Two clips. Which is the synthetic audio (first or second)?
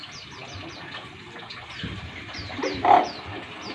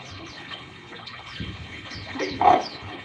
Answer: second